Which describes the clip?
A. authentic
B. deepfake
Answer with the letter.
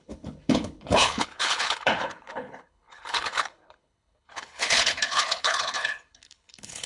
B